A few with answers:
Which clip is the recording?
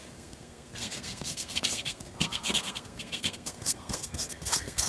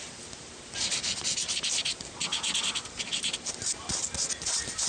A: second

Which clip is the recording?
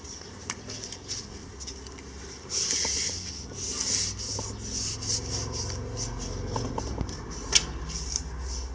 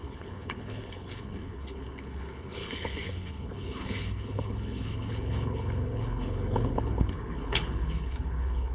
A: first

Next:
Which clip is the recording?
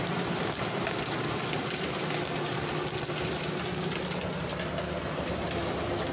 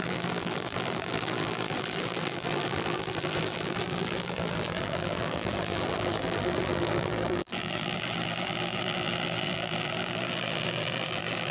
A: first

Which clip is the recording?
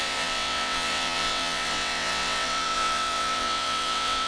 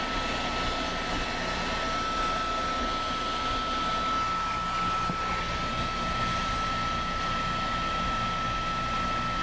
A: second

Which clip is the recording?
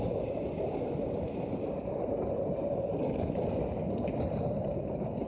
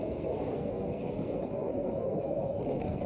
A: first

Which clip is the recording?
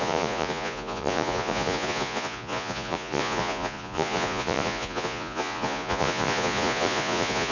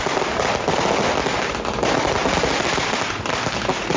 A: second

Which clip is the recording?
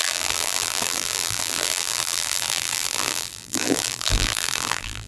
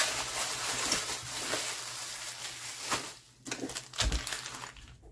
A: second